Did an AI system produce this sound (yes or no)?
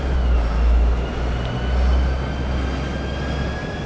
no